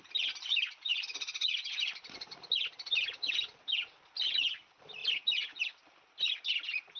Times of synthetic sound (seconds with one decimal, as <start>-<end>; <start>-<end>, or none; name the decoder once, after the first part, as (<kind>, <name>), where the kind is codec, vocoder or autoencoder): none